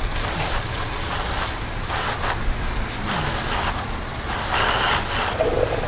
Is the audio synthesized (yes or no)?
no